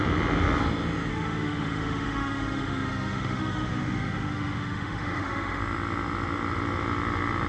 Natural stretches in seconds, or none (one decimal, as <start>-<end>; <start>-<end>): 0.0-1.1; 5.6-7.5